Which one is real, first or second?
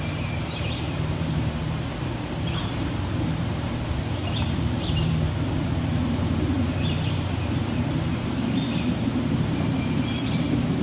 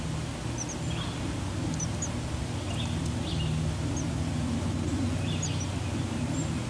second